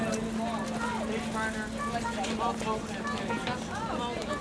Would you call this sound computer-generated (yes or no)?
no